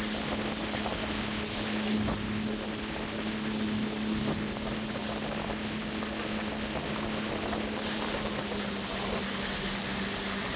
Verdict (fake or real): real